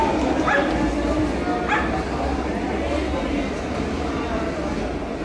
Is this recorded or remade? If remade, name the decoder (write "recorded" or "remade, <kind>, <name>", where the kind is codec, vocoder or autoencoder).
recorded